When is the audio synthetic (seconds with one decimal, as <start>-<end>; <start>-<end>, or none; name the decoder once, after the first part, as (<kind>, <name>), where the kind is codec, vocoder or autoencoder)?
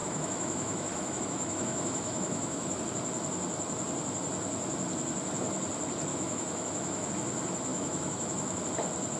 0.0-2.8 (autoencoder, DAC-VAE); 6.1-7.1; 7.7-8.6